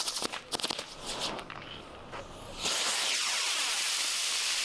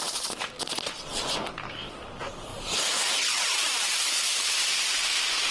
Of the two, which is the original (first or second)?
first